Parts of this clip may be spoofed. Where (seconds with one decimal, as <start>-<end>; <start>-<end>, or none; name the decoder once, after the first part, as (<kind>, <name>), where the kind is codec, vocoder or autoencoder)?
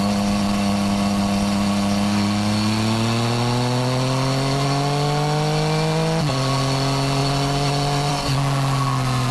none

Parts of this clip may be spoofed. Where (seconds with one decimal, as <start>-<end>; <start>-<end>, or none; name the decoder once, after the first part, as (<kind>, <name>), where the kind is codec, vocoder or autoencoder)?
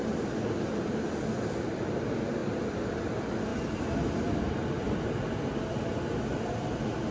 none